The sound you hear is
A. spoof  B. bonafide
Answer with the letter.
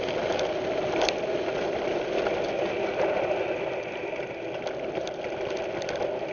B